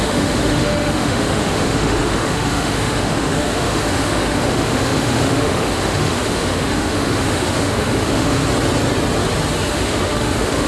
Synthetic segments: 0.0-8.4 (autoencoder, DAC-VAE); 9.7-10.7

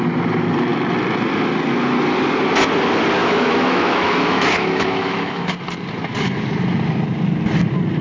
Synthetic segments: 3.2-5.5 (autoencoder, DAC-VAE)

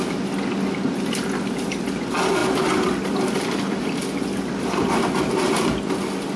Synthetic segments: none

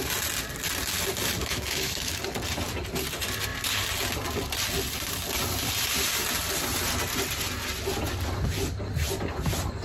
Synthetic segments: 1.4-2.2 (autoencoder, DAC-VAE)

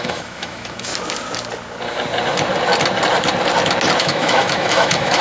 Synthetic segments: 0.0-0.9 (autoencoder, DAC-VAE); 4.0-5.2

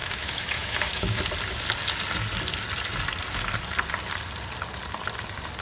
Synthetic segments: 0.0-1.2 (autoencoder, DAC-VAE)

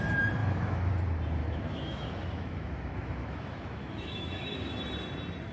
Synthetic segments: 0.4-0.9 (autoencoder, DAC-VAE); 1.4-4.7